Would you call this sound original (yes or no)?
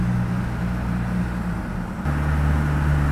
yes